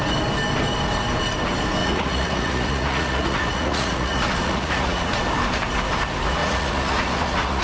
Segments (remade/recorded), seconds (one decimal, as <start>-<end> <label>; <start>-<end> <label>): 0.0-1.8 recorded; 1.8-5.1 remade; 5.1-6.4 recorded; 6.4-7.6 remade